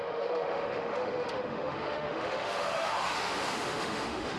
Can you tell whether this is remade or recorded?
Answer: remade